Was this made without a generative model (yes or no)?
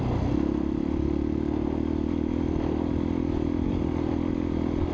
yes